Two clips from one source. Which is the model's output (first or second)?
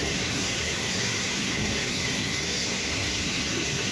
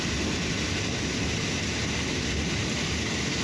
first